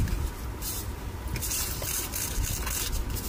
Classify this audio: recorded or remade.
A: recorded